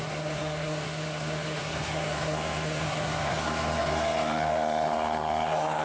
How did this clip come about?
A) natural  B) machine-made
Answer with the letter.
B